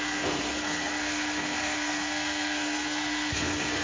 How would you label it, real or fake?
fake